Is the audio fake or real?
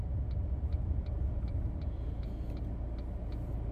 real